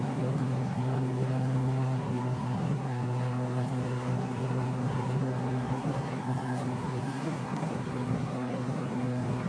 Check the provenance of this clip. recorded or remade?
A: remade